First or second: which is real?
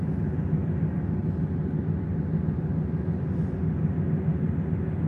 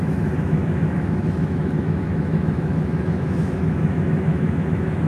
first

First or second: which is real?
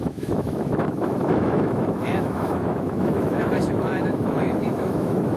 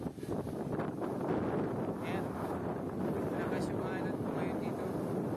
second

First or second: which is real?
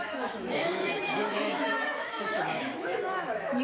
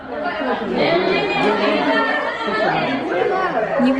second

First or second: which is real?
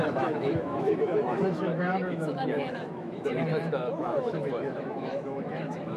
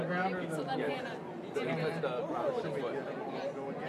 second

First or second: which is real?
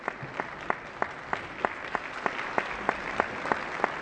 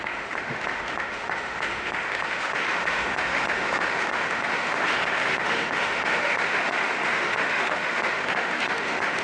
first